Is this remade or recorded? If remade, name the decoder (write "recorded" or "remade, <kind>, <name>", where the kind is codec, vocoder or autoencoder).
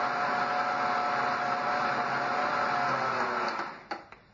recorded